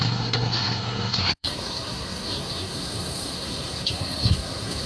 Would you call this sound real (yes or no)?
no